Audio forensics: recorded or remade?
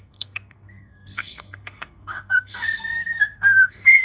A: remade